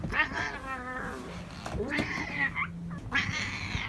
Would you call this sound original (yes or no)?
yes